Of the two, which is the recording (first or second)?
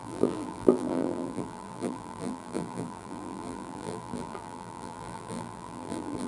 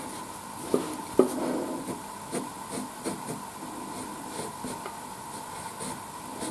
second